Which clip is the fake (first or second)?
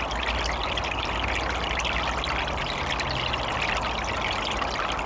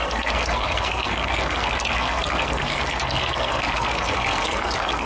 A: second